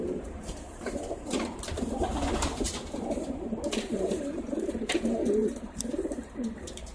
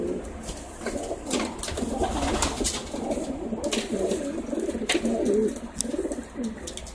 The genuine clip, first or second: second